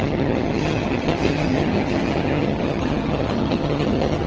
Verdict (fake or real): fake